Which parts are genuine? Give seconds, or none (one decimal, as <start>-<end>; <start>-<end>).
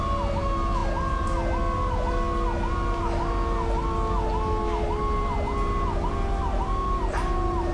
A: 0.0-7.7